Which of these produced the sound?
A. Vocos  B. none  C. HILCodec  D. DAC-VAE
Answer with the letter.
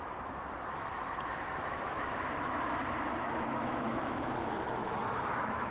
D